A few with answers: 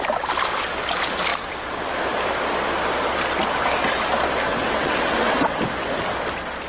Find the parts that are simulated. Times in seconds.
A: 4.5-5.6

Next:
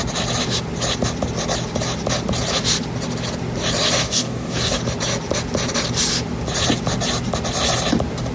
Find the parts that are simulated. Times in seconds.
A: 4.0-4.8

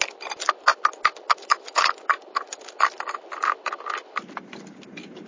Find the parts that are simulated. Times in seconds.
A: none

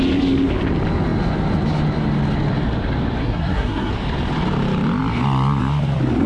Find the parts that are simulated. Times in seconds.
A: 3.2-3.9

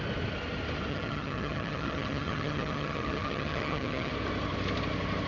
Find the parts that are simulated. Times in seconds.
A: 0.9-4.1

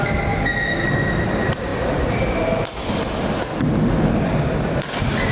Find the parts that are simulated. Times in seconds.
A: none

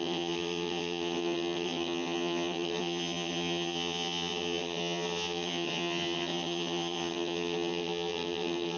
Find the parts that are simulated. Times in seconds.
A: 0.0-8.8

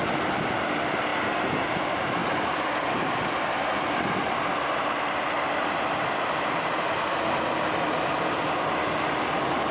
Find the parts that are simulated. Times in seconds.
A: none